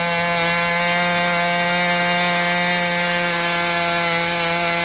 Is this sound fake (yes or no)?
no